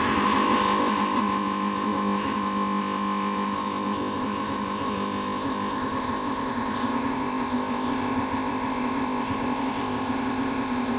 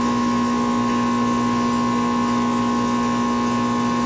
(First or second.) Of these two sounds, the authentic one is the second